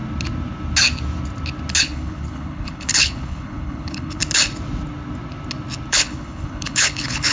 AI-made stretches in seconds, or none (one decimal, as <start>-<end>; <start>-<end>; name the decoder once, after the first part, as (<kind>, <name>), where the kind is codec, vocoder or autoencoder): 1.8-4.2 (codec, HILCodec); 5.9-7.3